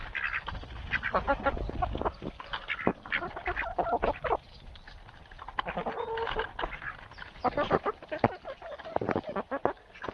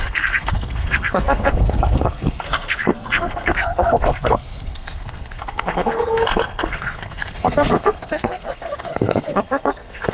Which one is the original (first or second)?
first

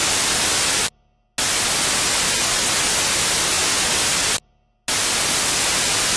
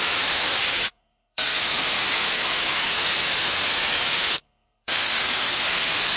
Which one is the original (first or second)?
first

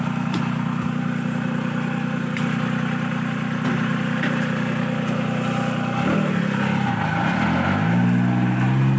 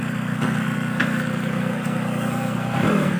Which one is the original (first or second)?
first